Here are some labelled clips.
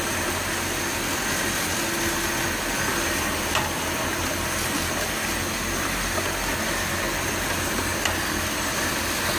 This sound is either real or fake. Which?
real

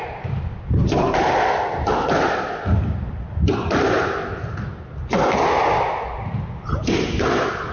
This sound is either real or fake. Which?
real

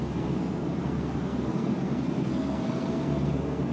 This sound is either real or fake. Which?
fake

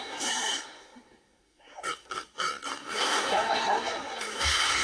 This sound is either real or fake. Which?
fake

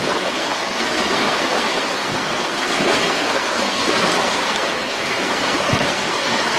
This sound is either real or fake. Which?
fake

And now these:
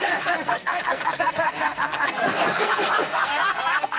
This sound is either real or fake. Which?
fake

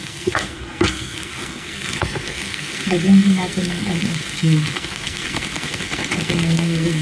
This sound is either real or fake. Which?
fake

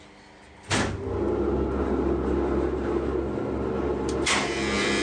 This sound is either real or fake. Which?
real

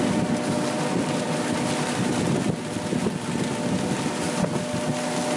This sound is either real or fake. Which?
real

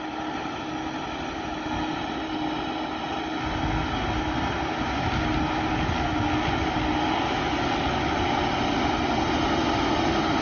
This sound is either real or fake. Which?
real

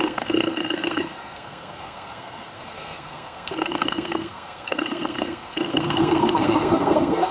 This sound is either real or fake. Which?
fake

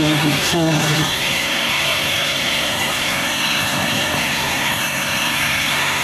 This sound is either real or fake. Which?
fake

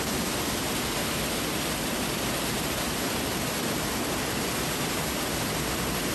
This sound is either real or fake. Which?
real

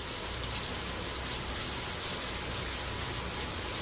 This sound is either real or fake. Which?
real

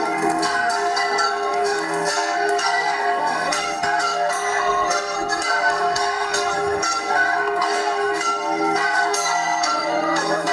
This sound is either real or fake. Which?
fake